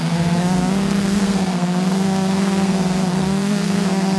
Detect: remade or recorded remade